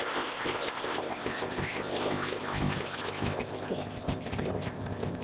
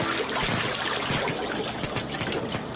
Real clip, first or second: second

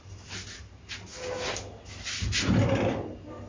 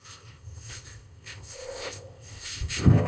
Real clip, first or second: first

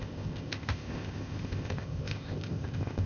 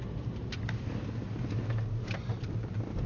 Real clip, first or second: second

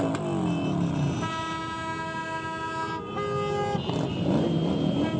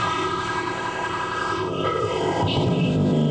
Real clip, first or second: first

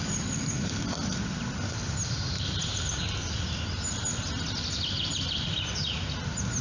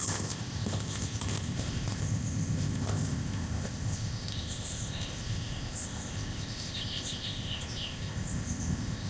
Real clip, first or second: first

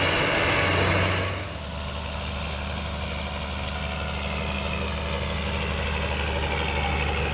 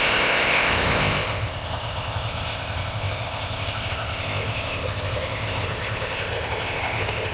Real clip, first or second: first